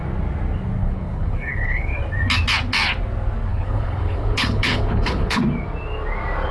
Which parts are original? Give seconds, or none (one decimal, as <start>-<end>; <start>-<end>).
0.0-0.8; 2.0-3.5; 5.4-6.5

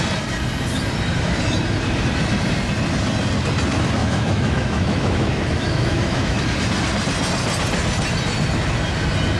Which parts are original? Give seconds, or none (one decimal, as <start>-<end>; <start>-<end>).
0.0-4.0; 6.4-9.4